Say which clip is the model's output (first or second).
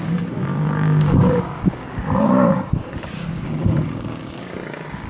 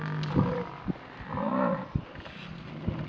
first